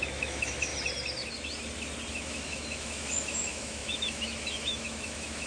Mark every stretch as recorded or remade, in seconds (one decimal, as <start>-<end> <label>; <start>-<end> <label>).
0.0-0.7 remade; 0.7-2.1 recorded; 2.1-5.5 remade